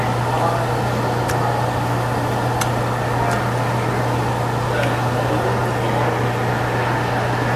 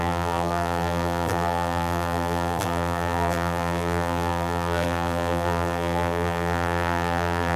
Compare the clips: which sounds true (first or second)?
first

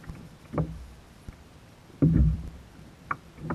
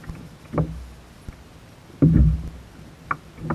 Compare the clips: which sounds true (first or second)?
second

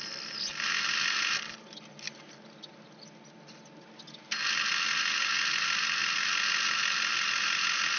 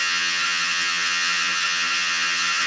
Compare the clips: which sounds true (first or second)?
first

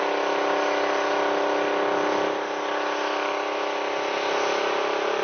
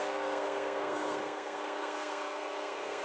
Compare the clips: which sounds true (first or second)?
first